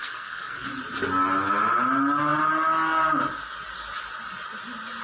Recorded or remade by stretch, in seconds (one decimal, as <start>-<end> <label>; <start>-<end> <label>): 0.0-0.7 remade; 0.7-5.0 recorded